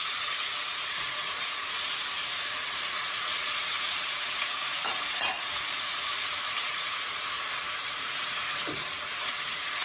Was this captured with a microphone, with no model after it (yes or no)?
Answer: no